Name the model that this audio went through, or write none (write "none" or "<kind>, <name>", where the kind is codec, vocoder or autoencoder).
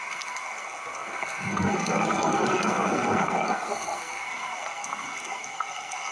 codec, SNAC